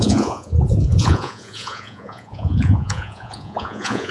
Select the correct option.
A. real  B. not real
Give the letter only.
B